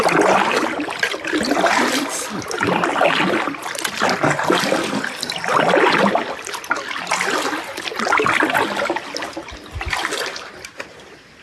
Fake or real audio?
real